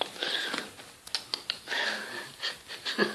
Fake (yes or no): no